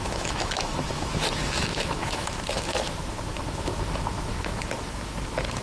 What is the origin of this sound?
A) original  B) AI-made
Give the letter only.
B